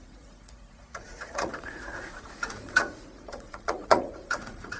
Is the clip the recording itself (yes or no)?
no